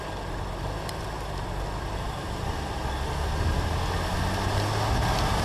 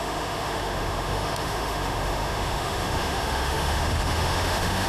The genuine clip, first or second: first